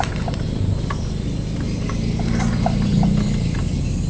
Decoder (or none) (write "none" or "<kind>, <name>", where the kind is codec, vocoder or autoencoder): none